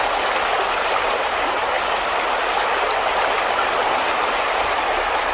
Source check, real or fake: real